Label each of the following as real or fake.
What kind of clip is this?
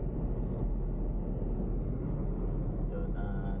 real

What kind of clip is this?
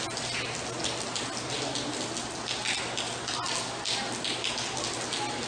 real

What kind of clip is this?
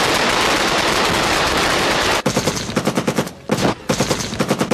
real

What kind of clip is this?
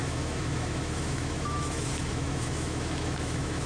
fake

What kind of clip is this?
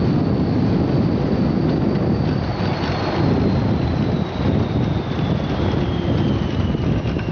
real